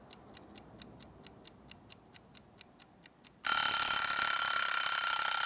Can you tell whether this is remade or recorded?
recorded